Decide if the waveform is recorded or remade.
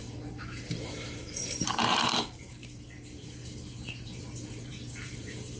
remade